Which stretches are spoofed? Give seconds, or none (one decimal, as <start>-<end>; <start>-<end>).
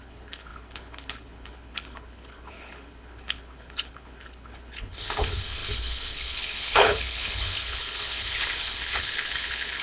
0.0-9.8